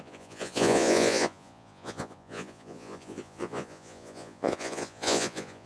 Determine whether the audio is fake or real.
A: fake